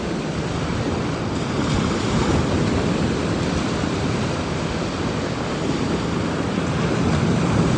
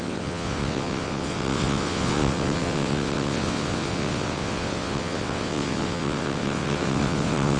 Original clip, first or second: first